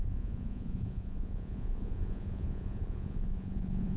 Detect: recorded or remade remade